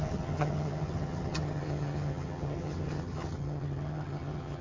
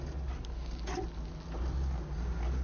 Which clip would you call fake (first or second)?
first